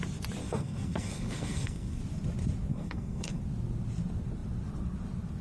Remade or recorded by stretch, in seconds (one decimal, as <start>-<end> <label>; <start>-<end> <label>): 0.0-0.4 recorded; 0.4-2.0 remade; 2.0-2.7 recorded; 2.7-3.4 remade; 3.4-5.4 recorded